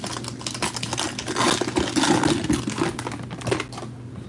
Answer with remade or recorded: recorded